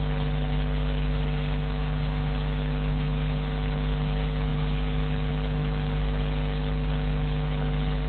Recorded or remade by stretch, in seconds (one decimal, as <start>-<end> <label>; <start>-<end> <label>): 0.0-8.1 remade

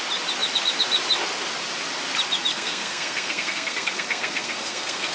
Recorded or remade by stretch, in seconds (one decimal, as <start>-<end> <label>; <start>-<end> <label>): 0.0-2.5 recorded; 2.5-5.1 remade

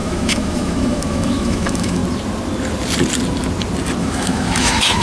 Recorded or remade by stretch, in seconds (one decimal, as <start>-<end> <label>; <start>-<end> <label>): 0.0-2.0 remade; 2.0-4.0 recorded; 4.0-5.0 remade

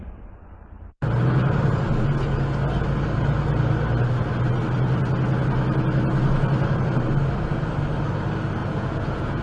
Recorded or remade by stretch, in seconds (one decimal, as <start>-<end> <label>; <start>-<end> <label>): 0.0-8.6 recorded; 8.6-9.4 remade